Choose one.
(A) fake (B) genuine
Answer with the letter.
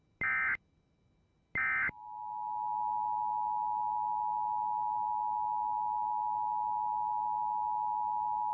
B